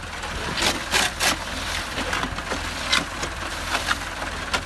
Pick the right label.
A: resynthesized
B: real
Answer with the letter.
B